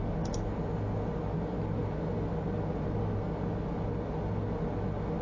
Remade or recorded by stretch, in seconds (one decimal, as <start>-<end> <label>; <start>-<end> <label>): 0.0-5.2 recorded